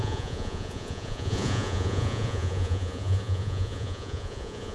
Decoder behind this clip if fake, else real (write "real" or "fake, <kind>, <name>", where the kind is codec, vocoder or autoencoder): fake, vocoder, Vocos